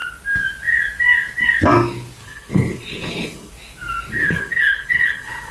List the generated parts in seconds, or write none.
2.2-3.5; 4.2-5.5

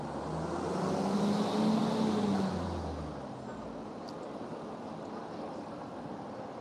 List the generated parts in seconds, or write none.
none

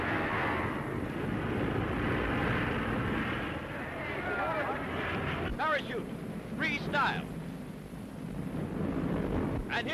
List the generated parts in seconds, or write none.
none